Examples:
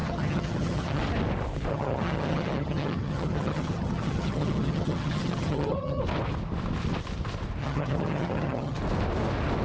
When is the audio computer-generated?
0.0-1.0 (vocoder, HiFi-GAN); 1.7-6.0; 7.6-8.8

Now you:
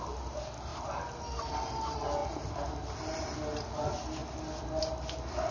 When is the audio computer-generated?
none